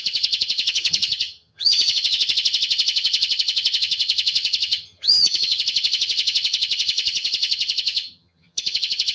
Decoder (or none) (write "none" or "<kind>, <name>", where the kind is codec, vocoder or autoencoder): vocoder, HiFi-GAN